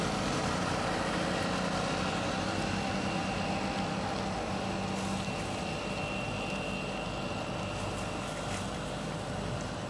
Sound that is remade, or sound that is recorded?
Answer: recorded